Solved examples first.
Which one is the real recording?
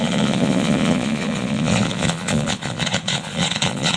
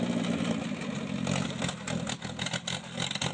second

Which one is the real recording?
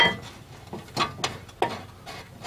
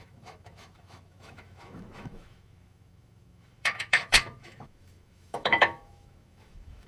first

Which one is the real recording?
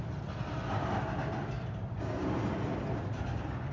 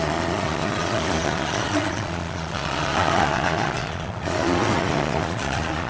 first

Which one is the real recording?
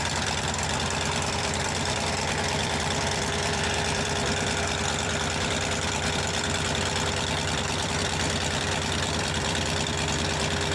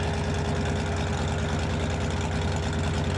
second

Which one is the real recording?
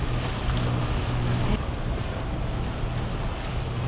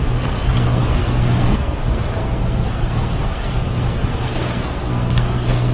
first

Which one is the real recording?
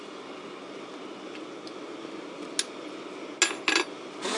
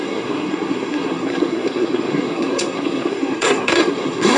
first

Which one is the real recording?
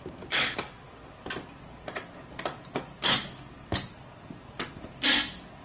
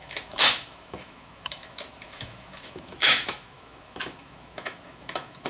first